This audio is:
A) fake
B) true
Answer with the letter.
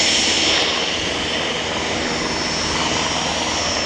B